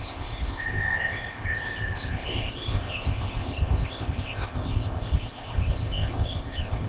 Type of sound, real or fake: fake